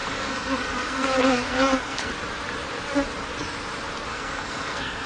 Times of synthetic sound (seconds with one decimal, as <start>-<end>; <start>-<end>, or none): 0.0-2.1; 4.1-5.1